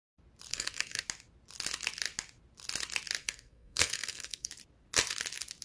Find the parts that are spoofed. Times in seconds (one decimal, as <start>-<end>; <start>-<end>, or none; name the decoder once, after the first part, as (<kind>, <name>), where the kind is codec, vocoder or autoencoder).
0.5-1.0 (codec, SNAC); 3.2-4.5